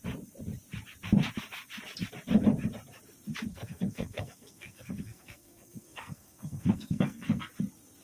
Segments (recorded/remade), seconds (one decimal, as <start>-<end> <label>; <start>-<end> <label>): 0.0-3.5 recorded; 3.5-7.5 remade; 7.5-8.0 recorded